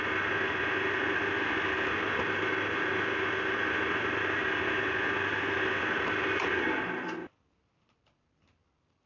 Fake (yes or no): no